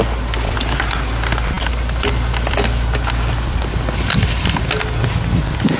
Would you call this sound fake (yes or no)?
no